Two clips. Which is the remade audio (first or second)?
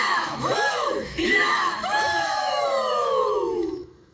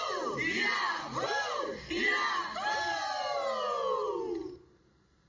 first